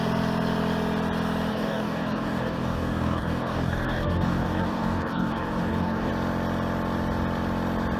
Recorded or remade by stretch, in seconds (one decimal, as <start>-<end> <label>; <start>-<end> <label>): 0.0-1.5 recorded; 1.5-6.1 remade; 6.1-8.0 recorded